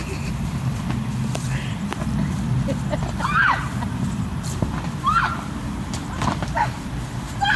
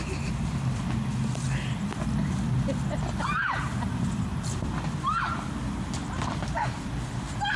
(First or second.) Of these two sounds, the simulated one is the first